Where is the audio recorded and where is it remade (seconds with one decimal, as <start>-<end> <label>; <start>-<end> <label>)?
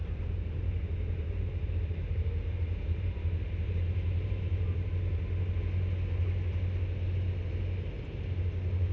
0.0-4.9 remade; 4.9-8.9 recorded